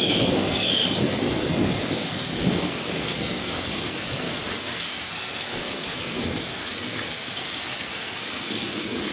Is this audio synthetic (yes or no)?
yes